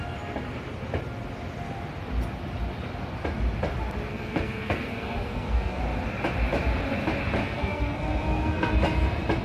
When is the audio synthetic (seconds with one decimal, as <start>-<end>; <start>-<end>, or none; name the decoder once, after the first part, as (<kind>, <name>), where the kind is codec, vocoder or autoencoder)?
4.1-5.8 (codec, SNAC); 7.4-8.7

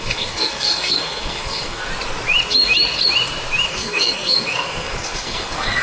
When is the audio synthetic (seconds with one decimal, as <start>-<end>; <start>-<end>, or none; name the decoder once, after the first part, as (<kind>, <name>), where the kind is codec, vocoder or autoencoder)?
0.0-1.9 (codec, SNAC); 3.7-5.8

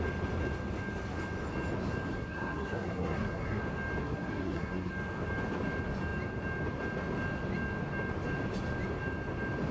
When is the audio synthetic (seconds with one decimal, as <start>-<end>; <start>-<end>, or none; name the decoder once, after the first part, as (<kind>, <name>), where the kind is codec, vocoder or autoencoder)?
2.1-3.6 (codec, SNAC); 4.0-4.9

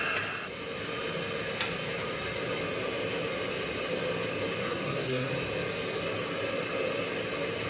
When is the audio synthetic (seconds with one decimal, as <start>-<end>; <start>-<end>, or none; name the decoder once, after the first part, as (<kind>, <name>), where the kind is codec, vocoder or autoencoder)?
4.6-5.3 (codec, SNAC)

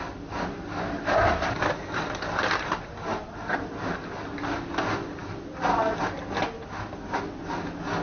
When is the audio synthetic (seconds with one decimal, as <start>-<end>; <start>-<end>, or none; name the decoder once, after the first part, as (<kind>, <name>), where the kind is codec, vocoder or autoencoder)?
none

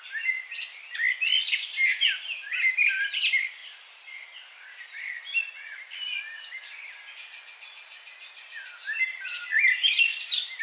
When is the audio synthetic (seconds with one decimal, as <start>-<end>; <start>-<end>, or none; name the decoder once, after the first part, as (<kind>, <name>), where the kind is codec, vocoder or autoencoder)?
none

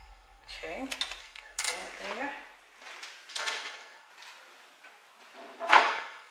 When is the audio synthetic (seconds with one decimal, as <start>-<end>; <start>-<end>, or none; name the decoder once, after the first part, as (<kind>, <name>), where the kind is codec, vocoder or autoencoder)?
0.0-0.5 (codec, SNAC); 1.2-1.8; 3.3-4.1; 5.7-6.3